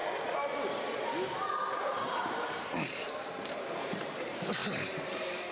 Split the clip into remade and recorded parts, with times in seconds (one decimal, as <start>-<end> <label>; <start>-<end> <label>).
0.0-1.8 recorded; 1.8-5.5 remade